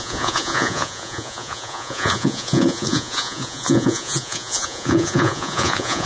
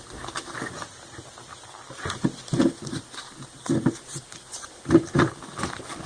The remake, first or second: first